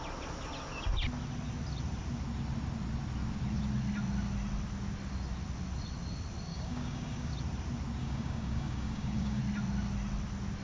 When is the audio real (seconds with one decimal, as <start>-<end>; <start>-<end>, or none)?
0.0-6.5; 7.3-8.0; 9.4-10.6